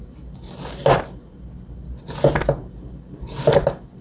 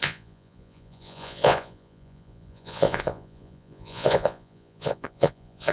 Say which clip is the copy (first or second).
second